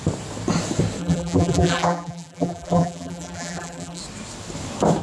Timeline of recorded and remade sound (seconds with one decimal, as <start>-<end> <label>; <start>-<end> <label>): 0.0-1.0 recorded; 1.0-4.0 remade; 4.0-5.0 recorded